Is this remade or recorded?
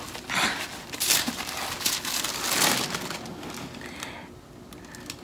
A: recorded